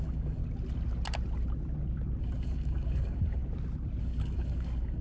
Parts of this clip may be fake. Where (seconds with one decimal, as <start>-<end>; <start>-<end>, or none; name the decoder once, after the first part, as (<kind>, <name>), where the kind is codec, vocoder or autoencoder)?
0.0-0.4 (codec, DAC); 2.2-3.4; 4.0-5.0